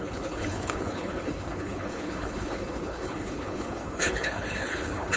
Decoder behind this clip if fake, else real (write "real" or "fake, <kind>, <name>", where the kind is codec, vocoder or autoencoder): fake, codec, HILCodec